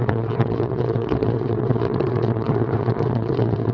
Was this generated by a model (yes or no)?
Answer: yes